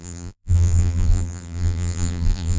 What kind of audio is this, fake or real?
fake